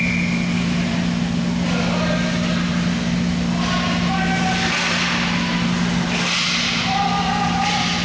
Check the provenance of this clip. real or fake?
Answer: real